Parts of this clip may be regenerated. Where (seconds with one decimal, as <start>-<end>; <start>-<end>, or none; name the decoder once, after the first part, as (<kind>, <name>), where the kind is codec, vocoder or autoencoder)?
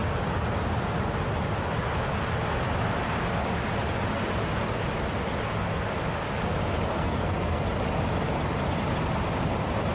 6.9-7.6 (codec, SNAC)